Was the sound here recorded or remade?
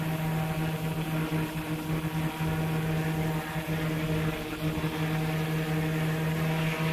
recorded